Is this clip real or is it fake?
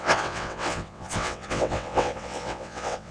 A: fake